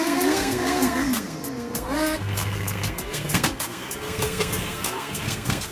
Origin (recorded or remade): remade